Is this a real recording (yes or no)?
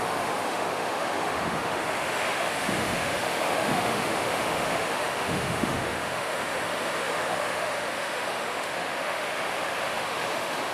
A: no